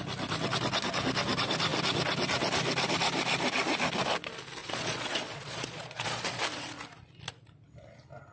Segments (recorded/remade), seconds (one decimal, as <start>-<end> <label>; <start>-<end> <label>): 0.0-4.6 recorded; 4.6-6.4 remade; 6.4-8.3 recorded